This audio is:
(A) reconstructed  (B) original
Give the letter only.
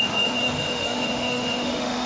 A